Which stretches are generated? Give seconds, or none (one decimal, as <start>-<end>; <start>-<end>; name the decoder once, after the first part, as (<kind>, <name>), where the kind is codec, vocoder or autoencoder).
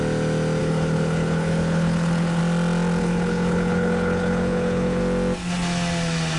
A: 0.6-2.4 (codec, HILCodec); 3.0-5.0